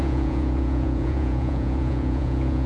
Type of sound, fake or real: fake